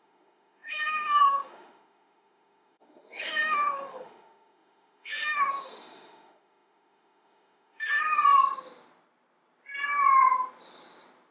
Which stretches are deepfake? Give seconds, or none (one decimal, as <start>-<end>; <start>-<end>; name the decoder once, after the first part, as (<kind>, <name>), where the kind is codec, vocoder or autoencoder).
0.0-8.0 (autoencoder, DAC-VAE)